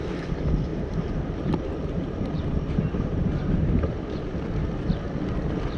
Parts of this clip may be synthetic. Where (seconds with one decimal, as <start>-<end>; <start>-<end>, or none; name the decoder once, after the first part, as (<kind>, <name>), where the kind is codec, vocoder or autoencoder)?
0.7-4.2 (vocoder, BigVGAN v2)